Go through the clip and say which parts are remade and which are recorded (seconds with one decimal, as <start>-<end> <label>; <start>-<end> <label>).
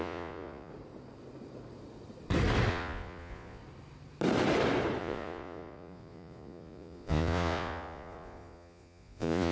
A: 0.0-0.7 remade; 0.7-2.7 recorded; 2.7-3.6 remade; 3.6-5.0 recorded; 5.0-9.5 remade